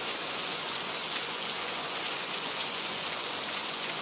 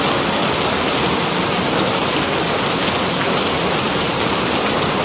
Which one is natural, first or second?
second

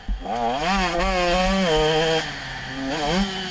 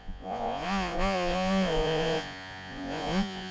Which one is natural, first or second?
first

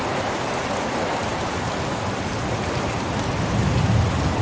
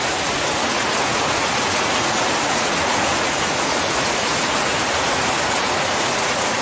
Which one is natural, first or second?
first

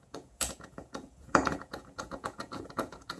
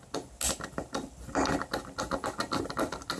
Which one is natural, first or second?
second